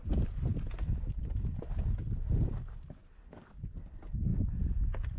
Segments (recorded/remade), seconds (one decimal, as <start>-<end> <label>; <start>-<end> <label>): 0.0-5.2 recorded